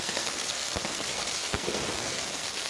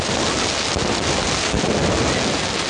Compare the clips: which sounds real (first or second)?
second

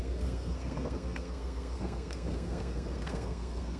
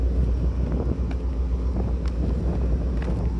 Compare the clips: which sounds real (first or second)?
second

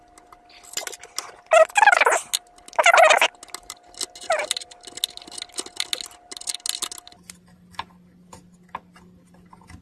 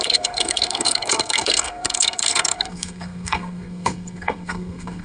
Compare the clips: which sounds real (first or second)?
first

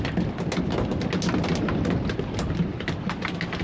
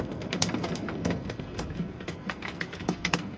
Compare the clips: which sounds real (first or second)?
first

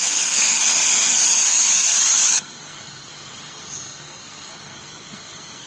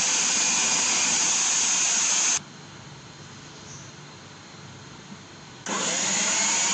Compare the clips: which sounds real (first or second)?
second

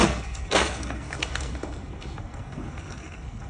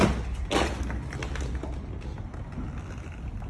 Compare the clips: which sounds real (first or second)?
second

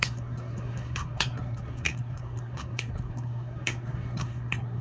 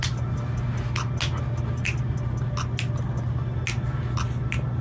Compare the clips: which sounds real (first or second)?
second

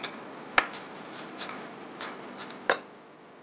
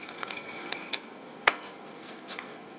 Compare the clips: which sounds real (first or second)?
first